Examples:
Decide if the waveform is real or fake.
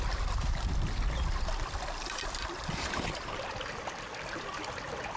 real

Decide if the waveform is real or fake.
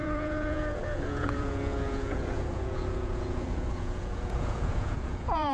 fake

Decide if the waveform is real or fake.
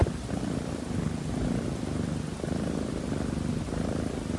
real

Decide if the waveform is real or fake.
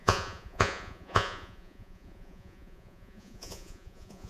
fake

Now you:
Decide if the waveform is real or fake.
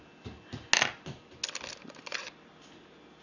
real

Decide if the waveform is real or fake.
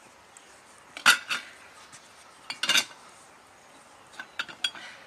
real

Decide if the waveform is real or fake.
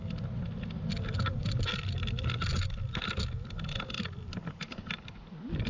real